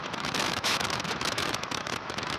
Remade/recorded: remade